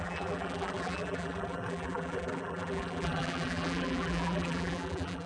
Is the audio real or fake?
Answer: fake